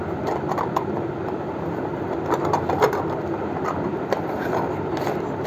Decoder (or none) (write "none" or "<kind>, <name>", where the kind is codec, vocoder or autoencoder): none